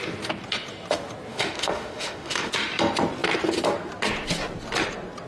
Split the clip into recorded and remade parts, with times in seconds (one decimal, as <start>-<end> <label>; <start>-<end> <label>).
0.0-1.3 recorded; 1.3-2.5 remade; 2.5-5.3 recorded